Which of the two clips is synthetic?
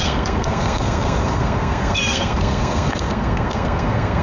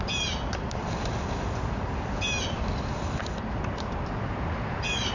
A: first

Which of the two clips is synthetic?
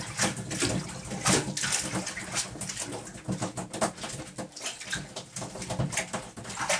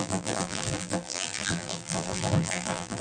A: second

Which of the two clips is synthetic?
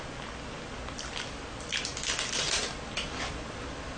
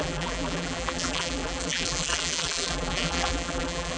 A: second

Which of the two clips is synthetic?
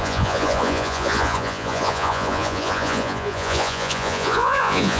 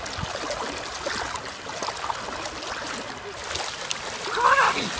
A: first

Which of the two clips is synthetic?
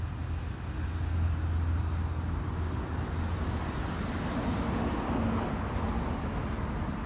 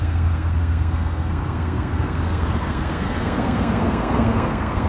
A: second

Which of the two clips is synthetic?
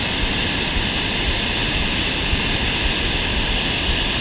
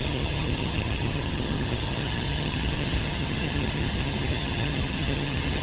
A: second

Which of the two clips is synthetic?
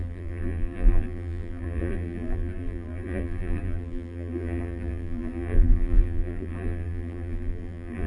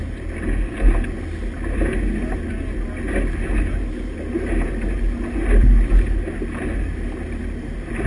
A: first